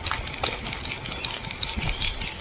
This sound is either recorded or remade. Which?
recorded